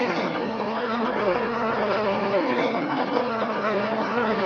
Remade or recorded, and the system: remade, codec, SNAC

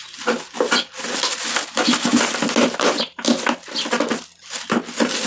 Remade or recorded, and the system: recorded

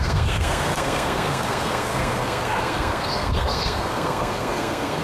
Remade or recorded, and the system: remade, codec, SNAC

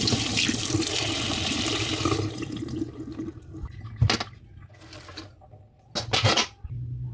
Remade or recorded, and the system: recorded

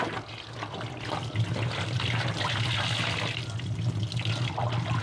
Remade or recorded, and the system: recorded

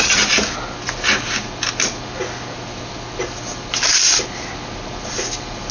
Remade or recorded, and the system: recorded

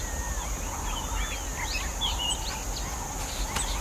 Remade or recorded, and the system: recorded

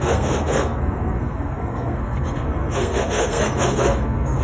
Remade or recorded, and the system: remade, codec, SNAC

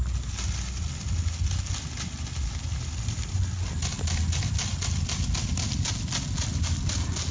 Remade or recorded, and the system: recorded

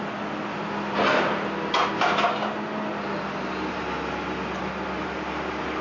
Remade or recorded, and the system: recorded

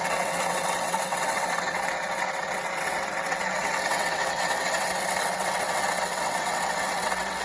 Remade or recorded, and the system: remade, vocoder, WaveNeXt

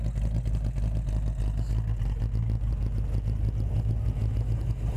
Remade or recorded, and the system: recorded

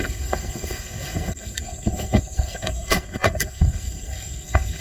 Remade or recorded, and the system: remade, codec, SNAC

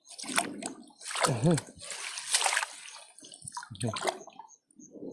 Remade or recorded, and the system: recorded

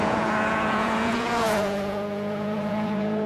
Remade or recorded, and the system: remade, vocoder, Vocos